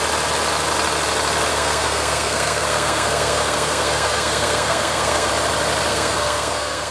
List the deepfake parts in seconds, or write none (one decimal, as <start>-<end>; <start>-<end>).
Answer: 1.5-5.3; 5.9-6.9